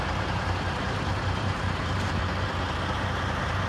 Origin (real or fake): fake